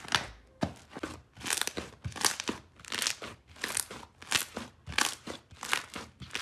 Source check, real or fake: real